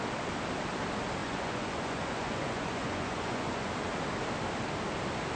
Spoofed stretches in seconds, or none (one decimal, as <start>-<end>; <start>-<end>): 1.2-3.7